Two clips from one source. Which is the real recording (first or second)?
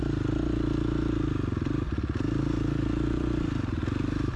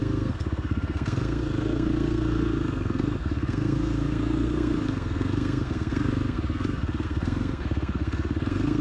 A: first